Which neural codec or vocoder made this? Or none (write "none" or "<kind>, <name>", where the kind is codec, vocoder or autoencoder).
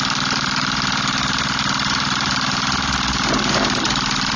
none